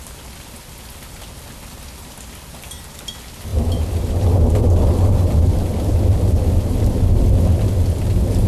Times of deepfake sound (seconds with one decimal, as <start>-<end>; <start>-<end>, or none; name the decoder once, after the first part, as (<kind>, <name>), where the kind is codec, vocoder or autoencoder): none